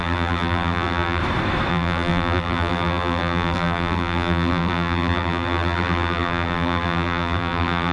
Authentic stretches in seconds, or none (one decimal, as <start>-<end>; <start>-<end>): 1.2-1.7